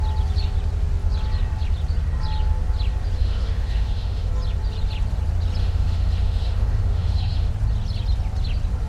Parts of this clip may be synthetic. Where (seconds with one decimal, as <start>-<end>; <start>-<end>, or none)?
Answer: 3.2-4.3; 5.6-7.5